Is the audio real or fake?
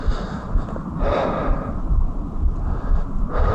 real